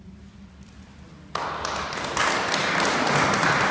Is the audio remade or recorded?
recorded